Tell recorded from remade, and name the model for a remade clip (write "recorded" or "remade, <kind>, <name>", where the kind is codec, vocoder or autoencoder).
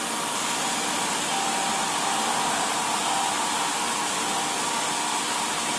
recorded